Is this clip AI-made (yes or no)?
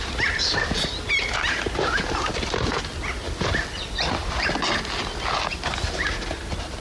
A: no